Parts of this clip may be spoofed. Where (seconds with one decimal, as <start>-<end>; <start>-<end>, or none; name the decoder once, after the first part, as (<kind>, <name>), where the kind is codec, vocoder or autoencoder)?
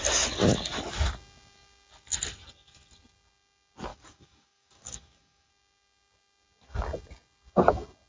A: 3.9-5.5 (codec, DAC)